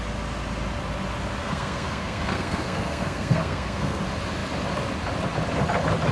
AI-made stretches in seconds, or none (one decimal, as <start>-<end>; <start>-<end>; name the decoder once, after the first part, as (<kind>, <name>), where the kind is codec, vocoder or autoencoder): 1.4-4.0 (codec, SNAC)